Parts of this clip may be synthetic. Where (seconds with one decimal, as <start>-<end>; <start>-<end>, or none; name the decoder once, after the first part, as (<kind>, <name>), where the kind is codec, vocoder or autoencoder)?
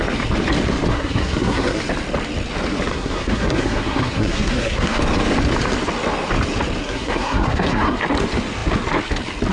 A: 0.9-1.8 (codec, SNAC); 2.9-5.0; 6.8-8.0